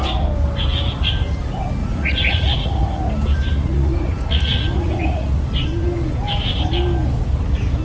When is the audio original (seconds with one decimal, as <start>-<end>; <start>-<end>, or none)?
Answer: 0.0-1.8; 3.0-3.5; 5.4-7.8